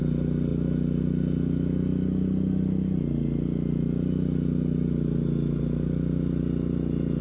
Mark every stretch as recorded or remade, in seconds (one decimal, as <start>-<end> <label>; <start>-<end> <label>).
0.0-7.2 recorded